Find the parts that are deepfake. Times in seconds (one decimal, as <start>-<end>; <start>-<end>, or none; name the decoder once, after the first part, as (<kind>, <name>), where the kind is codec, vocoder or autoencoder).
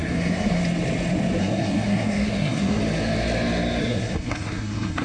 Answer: 0.0-0.6 (codec, SNAC); 1.4-2.8; 3.8-5.0